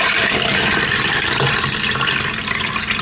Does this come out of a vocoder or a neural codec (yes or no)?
no